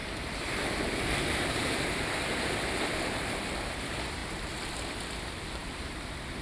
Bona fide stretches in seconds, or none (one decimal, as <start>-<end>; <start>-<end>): none